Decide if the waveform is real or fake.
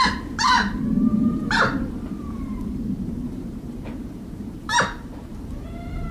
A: fake